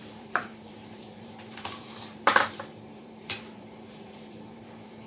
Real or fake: fake